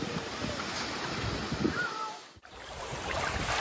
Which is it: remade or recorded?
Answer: recorded